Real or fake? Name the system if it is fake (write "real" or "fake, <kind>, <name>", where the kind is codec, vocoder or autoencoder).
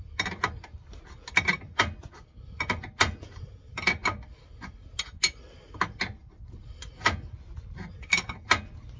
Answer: real